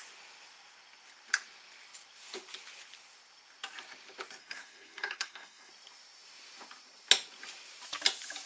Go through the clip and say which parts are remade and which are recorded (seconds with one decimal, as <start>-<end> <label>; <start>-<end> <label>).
0.0-4.4 recorded; 4.4-5.7 remade; 5.7-8.5 recorded